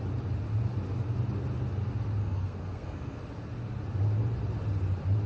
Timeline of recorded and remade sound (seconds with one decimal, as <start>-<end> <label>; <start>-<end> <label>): 0.0-2.2 recorded; 2.2-3.2 remade; 3.2-5.3 recorded